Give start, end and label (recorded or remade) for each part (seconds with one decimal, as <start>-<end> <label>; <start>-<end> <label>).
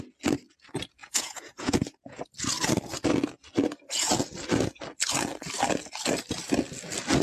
0.0-1.0 recorded; 1.0-2.3 remade; 2.3-7.2 recorded